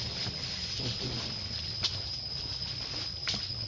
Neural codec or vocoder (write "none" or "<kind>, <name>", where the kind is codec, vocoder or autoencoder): none